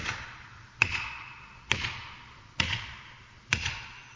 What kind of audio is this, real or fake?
fake